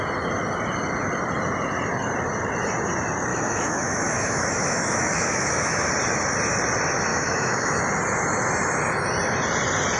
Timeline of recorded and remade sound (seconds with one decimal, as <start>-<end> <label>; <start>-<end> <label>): 0.0-3.3 recorded; 3.3-5.9 remade; 5.9-7.1 recorded; 7.1-7.8 remade; 7.8-10.0 recorded